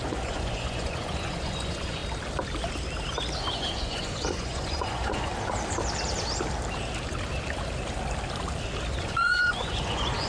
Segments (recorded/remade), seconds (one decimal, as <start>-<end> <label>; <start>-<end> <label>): 0.0-2.0 remade; 2.0-3.4 recorded; 3.4-5.3 remade; 5.3-8.9 recorded; 8.9-10.3 remade